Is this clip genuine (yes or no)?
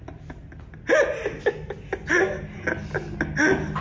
yes